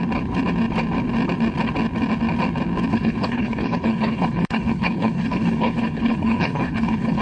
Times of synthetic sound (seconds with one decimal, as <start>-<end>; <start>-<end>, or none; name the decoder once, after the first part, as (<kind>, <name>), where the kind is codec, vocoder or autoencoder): 2.9-7.2 (codec, HILCodec)